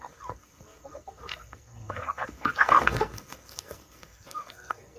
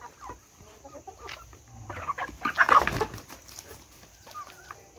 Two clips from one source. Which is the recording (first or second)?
second